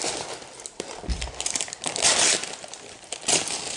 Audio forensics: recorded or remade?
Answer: recorded